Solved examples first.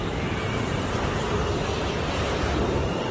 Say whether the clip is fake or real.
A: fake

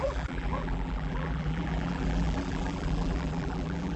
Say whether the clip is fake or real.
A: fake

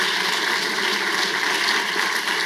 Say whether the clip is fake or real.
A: fake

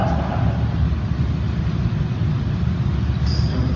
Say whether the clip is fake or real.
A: real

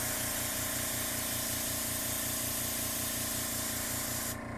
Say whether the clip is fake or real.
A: real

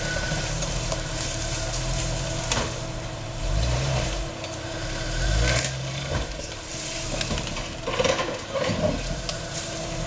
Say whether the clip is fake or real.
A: fake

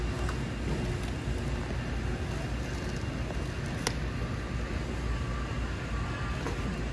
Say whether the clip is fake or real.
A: real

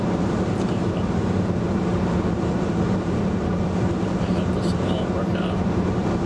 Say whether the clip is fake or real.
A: fake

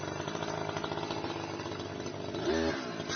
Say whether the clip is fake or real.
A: real